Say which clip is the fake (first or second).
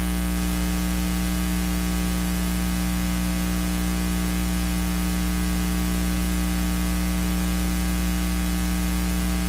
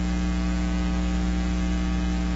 second